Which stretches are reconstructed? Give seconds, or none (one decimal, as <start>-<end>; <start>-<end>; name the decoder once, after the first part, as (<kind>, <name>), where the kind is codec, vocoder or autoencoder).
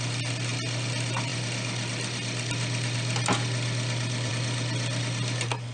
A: none